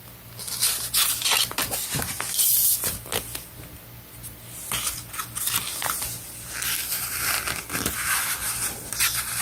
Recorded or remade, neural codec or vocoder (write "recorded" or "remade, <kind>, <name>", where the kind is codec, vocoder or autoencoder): recorded